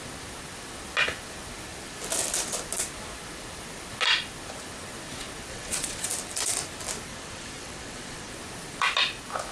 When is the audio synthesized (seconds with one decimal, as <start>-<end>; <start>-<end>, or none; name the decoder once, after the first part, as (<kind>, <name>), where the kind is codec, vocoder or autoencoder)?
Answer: 5.5-6.1 (vocoder, WaveNeXt); 7.1-8.3